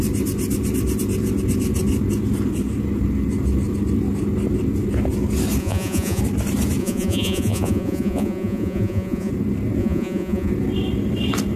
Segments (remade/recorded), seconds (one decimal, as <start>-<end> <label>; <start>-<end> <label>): 0.0-5.6 recorded; 5.6-6.2 remade; 6.2-6.8 recorded; 6.8-9.3 remade; 9.3-9.8 recorded; 9.8-10.5 remade; 10.5-11.6 recorded